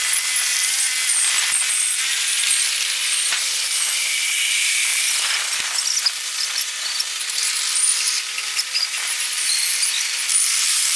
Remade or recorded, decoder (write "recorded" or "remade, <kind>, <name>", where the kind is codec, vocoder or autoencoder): remade, vocoder, BigVGAN v2